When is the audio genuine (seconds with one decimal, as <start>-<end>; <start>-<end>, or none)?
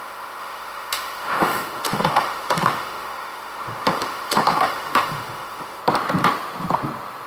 5.8-7.3